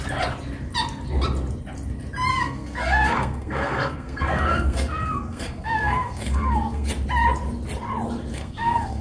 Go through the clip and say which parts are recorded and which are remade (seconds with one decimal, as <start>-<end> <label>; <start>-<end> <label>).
0.0-2.3 recorded; 2.3-6.9 remade; 6.9-8.3 recorded; 8.3-9.0 remade